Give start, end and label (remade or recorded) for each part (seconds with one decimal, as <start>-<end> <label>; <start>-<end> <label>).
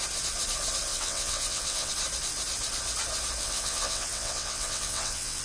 0.0-0.9 recorded; 0.9-1.9 remade; 1.9-3.4 recorded; 3.4-5.4 remade